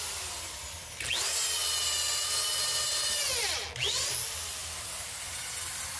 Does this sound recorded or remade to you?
recorded